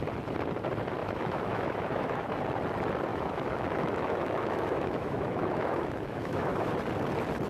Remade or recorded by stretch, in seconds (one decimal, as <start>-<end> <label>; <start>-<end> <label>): 0.0-1.0 recorded; 1.0-2.4 remade; 2.4-3.1 recorded; 3.1-6.7 remade; 6.7-7.5 recorded